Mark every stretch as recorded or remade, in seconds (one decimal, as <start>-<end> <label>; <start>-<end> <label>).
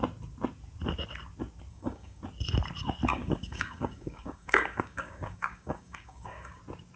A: 0.0-1.7 recorded; 1.7-2.2 remade; 2.2-3.1 recorded; 3.1-6.6 remade; 6.6-7.0 recorded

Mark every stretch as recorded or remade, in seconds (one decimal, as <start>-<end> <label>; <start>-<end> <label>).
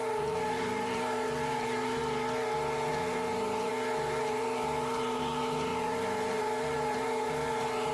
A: 0.0-2.0 remade; 2.0-2.9 recorded; 2.9-3.7 remade; 3.7-4.2 recorded; 4.2-7.9 remade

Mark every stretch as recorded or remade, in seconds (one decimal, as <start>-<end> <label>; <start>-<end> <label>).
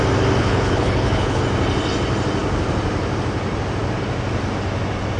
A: 0.0-0.4 recorded; 0.4-1.4 remade; 1.4-5.2 recorded